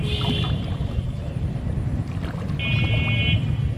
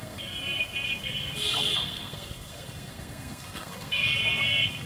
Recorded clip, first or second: first